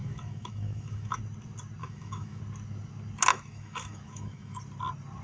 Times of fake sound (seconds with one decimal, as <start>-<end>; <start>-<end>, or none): 0.0-1.2; 1.8-2.4; 3.3-4.6